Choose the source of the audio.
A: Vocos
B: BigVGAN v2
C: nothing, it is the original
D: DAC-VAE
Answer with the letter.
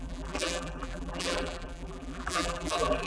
B